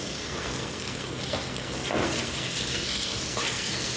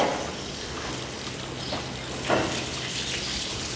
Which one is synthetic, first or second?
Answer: first